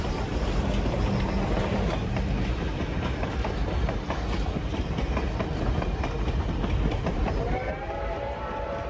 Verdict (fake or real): fake